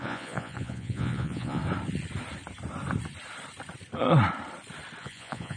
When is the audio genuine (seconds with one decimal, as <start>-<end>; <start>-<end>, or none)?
1.6-5.0